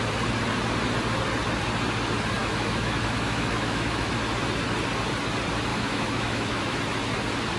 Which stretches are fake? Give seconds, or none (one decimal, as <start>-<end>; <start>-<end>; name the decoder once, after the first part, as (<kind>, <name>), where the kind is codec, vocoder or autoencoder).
2.4-4.1 (autoencoder, DAC-VAE); 5.7-6.8